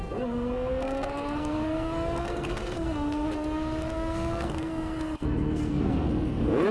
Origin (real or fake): fake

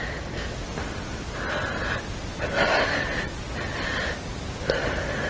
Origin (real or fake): real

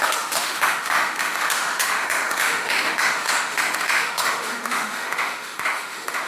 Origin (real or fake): fake